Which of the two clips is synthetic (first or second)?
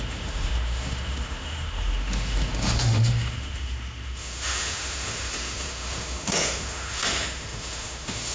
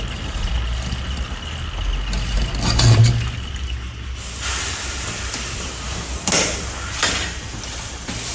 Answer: first